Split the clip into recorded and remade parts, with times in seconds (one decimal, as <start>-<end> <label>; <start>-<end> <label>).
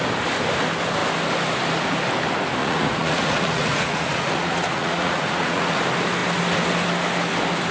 0.0-2.6 recorded; 2.6-5.8 remade; 5.8-7.7 recorded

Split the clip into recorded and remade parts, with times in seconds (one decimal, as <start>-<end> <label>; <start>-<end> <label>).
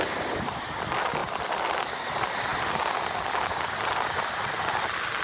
0.0-5.2 recorded